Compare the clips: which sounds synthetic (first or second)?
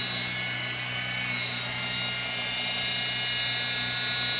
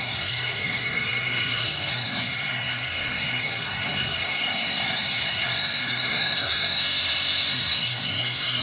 second